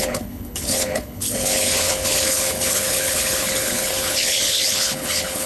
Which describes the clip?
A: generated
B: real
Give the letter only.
A